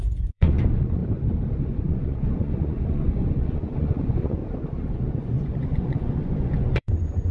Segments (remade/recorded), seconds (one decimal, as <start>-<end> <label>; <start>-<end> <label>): 0.0-1.0 remade; 1.0-1.6 recorded; 1.6-4.4 remade; 4.4-4.9 recorded; 4.9-7.3 remade